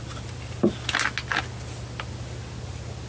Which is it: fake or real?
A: real